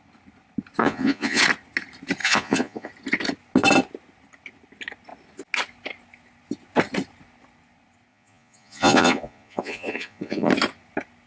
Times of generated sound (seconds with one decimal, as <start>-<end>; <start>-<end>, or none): 0.8-1.4; 2.2-2.9; 8.1-10.5